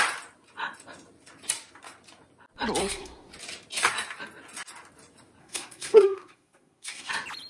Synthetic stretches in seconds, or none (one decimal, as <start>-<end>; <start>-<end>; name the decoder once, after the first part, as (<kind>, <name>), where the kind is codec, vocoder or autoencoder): 2.8-3.3 (codec, SNAC); 5.4-7.1